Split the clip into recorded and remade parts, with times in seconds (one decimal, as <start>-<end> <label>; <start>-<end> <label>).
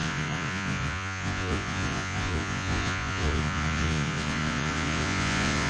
0.0-5.7 remade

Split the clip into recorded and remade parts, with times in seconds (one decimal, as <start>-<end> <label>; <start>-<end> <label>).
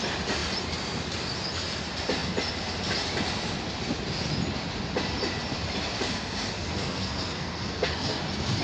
0.0-6.1 recorded; 6.1-8.2 remade; 8.2-8.6 recorded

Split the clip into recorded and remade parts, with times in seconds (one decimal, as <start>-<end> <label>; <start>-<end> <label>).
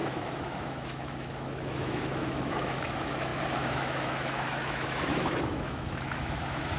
0.0-6.8 remade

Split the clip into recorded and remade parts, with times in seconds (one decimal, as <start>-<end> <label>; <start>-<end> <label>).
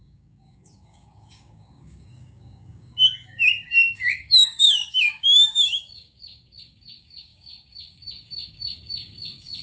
0.0-9.6 remade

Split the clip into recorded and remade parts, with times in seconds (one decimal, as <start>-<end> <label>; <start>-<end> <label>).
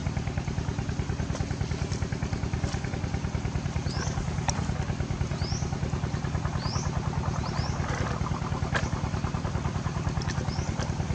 0.0-11.1 remade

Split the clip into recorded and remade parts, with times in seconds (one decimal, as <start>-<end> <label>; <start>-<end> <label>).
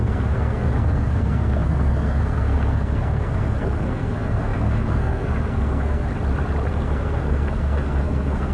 0.0-6.1 remade; 6.1-6.7 recorded; 6.7-8.5 remade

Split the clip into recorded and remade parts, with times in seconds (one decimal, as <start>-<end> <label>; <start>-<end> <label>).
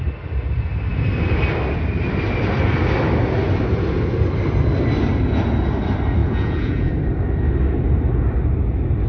0.0-6.2 recorded; 6.2-6.9 remade; 6.9-9.1 recorded